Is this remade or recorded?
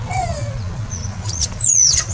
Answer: remade